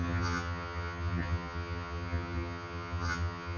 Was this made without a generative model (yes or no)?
no